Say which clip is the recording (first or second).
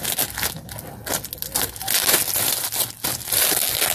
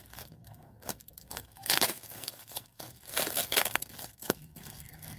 first